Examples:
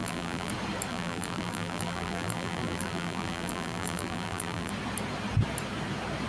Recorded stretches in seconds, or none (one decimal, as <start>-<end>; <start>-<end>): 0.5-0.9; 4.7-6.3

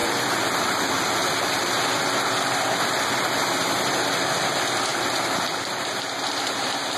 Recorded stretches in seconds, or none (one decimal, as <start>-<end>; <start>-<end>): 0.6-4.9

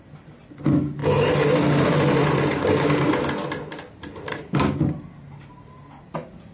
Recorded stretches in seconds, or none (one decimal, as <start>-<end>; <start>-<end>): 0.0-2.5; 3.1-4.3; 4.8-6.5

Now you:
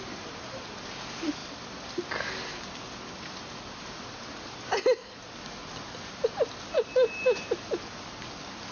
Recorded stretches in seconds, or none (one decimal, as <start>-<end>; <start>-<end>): 0.0-8.7

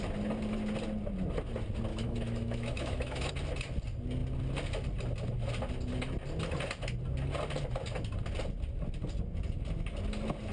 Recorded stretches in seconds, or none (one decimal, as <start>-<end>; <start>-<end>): 0.0-1.9; 3.3-10.5